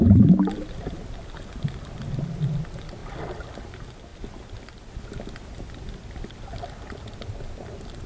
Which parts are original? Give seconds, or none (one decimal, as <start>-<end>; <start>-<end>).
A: 0.0-8.1